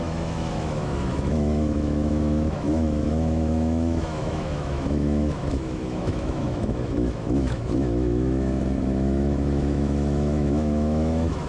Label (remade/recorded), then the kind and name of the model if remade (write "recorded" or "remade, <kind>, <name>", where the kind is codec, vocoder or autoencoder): remade, autoencoder, DAC-VAE